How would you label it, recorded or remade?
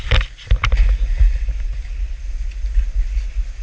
recorded